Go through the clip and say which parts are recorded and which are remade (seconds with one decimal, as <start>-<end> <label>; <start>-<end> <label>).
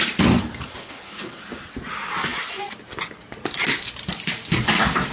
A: 0.0-0.8 recorded; 0.8-1.4 remade; 1.4-5.1 recorded